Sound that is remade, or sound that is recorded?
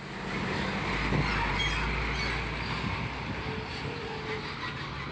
recorded